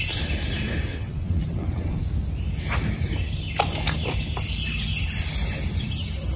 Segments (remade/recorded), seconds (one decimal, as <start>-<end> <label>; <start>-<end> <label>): 0.0-0.9 recorded; 0.9-2.0 remade; 2.0-6.4 recorded